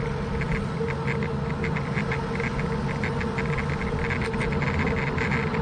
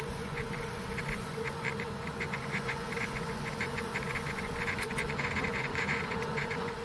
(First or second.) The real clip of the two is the first